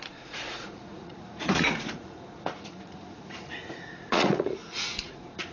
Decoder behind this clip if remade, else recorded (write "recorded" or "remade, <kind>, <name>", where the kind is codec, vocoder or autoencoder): remade, vocoder, Vocos